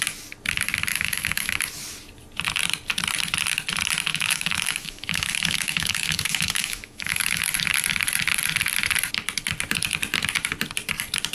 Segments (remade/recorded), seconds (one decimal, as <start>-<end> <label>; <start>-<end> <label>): 0.0-0.9 recorded; 0.9-1.6 remade; 1.6-4.1 recorded; 4.1-7.4 remade; 7.4-11.3 recorded